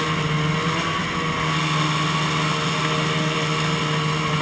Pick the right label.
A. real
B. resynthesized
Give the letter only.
A